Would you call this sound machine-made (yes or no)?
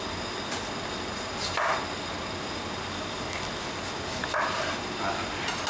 no